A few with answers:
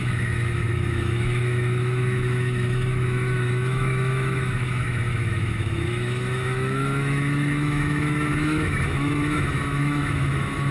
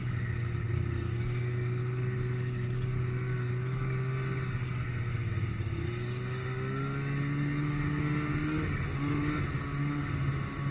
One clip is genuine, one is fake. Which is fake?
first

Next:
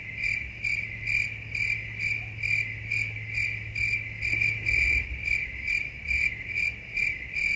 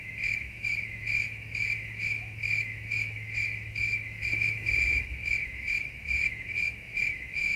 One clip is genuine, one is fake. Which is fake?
second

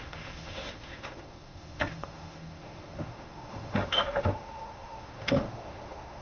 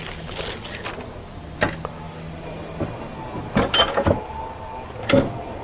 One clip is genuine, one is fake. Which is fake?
first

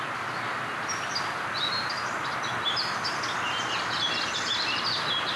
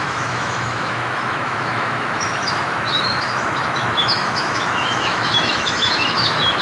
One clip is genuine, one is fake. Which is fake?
second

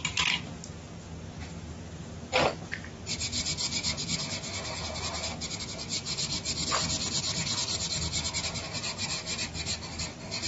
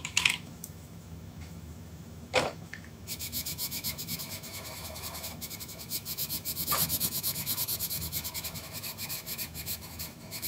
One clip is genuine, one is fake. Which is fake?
second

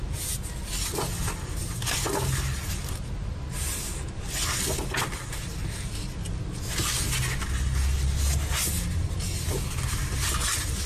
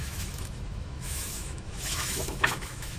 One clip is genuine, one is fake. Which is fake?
second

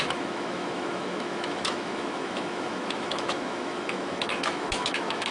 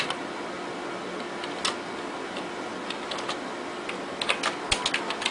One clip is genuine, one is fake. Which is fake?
first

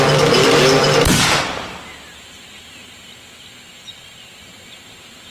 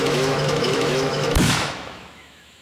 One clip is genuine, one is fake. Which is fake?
second